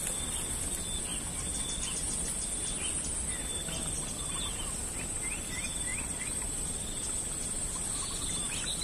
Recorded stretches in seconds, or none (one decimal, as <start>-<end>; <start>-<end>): 0.0-8.8